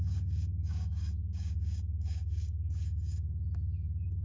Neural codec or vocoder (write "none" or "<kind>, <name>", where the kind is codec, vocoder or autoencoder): codec, DAC